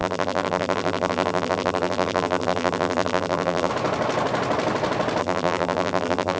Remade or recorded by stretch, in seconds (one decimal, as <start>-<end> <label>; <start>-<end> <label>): 0.0-3.7 remade; 3.7-5.2 recorded; 5.2-6.4 remade